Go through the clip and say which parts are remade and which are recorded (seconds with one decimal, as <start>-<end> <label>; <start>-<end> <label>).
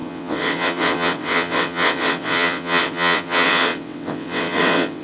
0.0-5.0 remade